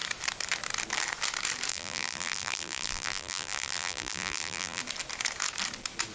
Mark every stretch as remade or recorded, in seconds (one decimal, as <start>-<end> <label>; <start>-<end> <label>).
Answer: 0.0-1.7 recorded; 1.7-4.8 remade; 4.8-6.1 recorded